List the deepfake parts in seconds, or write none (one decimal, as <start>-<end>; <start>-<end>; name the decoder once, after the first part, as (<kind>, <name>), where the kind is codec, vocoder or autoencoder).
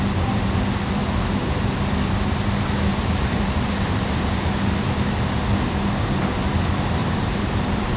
2.9-4.3 (vocoder, BigVGAN v2); 7.0-8.0